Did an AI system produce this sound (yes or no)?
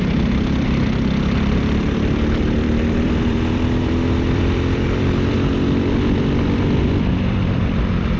yes